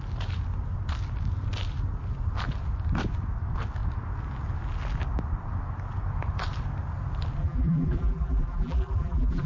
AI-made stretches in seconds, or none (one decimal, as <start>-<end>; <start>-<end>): 7.4-9.5